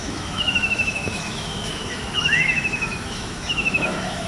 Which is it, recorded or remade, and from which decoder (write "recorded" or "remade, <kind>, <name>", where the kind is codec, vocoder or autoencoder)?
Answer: remade, autoencoder, DAC-VAE